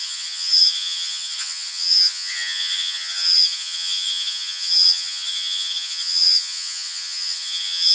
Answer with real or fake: fake